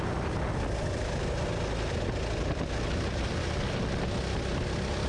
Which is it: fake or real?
real